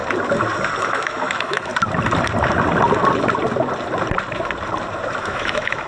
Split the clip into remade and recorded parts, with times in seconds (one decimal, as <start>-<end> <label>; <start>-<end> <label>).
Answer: 0.0-0.8 recorded; 0.8-1.7 remade; 1.7-5.2 recorded; 5.2-5.9 remade